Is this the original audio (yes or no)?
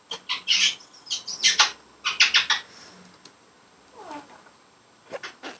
yes